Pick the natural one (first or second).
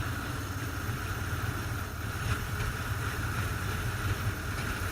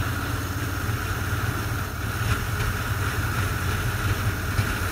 second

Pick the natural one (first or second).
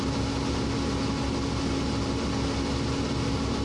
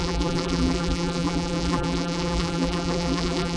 first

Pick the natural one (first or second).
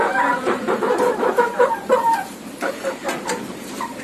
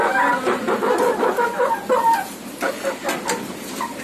second